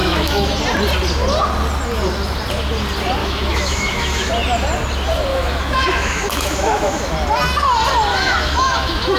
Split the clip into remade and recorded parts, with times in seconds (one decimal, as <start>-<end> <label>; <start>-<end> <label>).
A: 0.0-0.5 remade; 0.5-3.2 recorded; 3.2-4.3 remade; 4.3-5.3 recorded; 5.3-7.1 remade; 7.1-8.1 recorded; 8.1-9.2 remade